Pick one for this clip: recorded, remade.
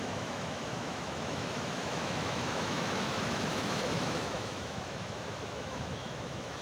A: remade